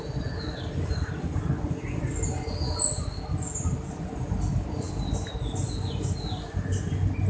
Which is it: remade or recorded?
recorded